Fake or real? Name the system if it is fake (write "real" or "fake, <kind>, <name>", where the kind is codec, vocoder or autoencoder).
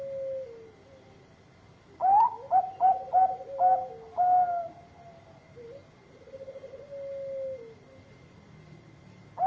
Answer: real